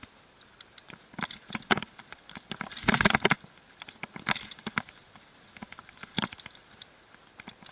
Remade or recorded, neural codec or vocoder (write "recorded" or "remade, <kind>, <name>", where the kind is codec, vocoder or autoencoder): recorded